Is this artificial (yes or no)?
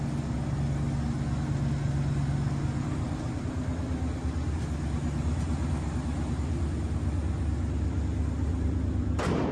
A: no